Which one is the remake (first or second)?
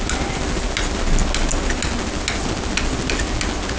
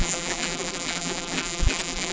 second